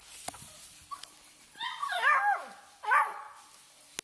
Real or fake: real